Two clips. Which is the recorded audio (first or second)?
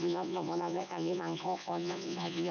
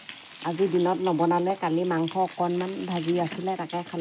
second